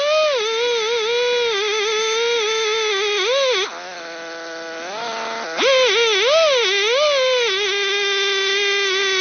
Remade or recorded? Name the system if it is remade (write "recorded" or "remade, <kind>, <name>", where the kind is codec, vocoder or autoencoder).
recorded